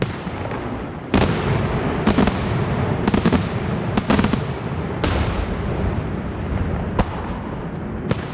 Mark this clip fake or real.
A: fake